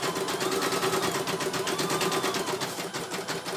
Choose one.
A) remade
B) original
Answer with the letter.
B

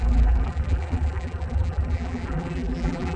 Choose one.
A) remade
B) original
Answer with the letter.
A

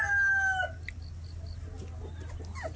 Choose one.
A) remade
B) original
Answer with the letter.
B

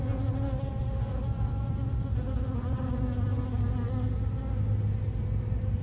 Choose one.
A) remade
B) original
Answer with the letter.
B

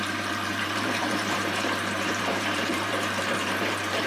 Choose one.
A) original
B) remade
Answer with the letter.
B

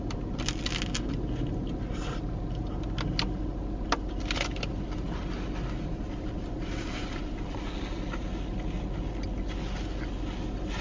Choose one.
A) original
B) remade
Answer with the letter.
A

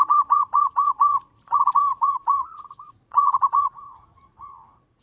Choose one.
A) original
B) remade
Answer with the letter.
B